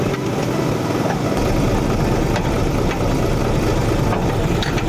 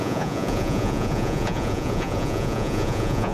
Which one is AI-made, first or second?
second